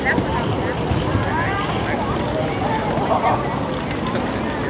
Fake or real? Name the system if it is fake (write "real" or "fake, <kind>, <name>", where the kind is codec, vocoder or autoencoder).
real